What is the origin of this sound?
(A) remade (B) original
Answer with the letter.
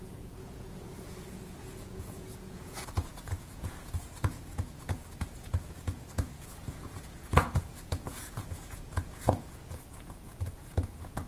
A